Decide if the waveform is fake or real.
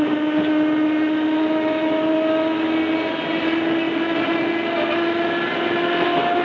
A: real